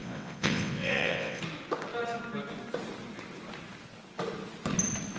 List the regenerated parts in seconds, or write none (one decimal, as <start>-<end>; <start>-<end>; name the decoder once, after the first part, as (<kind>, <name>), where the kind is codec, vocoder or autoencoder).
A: 0.0-1.4 (vocoder, WaveNeXt)